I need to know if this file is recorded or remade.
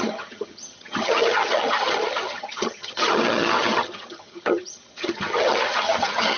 remade